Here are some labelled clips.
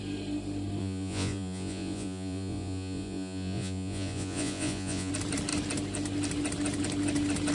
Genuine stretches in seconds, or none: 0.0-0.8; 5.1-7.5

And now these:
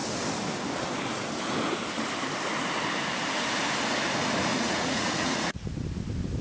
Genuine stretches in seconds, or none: 0.0-4.5; 5.7-6.4